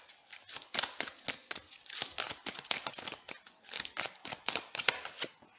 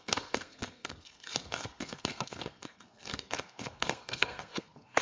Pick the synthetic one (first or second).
second